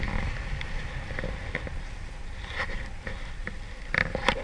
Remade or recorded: recorded